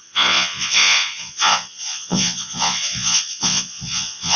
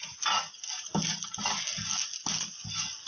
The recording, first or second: second